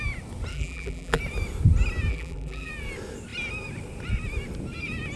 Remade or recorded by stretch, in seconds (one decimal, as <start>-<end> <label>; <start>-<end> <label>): 0.0-0.5 recorded; 0.5-1.2 remade; 1.2-2.1 recorded; 2.1-2.7 remade; 2.7-5.2 recorded